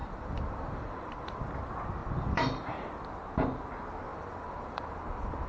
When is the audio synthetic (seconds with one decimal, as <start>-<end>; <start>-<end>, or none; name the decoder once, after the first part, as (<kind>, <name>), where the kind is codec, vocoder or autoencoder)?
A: 0.0-1.4 (vocoder, BigVGAN v2); 2.0-2.9; 4.1-5.5